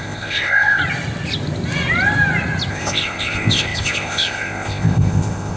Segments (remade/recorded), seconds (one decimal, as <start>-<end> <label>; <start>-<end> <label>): 0.0-0.8 remade; 0.8-2.7 recorded; 2.7-5.6 remade